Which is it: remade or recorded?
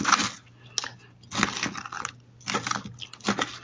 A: recorded